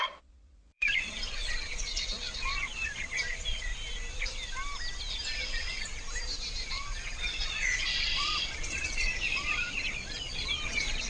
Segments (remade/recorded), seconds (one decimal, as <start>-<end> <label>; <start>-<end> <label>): 0.0-3.7 remade; 3.7-5.4 recorded; 5.4-5.9 remade; 5.9-6.6 recorded; 6.6-11.1 remade